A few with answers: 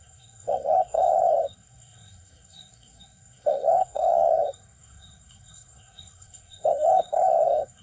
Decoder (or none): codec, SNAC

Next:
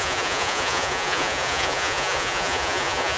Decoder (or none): vocoder, Vocos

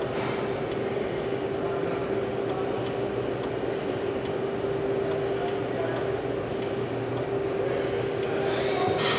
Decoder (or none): none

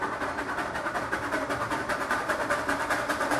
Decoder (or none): vocoder, BigVGAN v2